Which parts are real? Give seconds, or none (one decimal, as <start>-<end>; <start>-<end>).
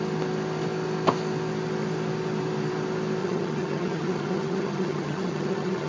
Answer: 0.0-3.2